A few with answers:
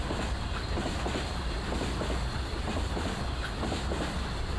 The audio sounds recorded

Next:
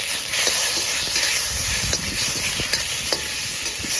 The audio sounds recorded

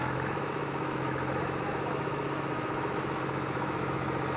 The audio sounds remade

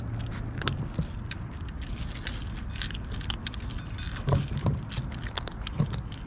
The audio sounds recorded